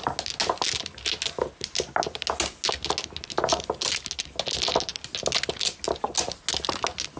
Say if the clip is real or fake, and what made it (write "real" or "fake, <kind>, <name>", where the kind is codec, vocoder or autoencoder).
real